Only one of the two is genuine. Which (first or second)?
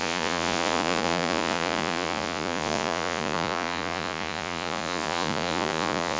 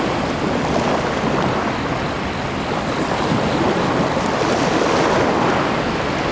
second